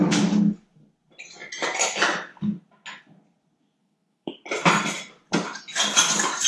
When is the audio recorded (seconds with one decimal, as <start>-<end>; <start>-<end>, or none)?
0.0-3.8; 4.3-6.5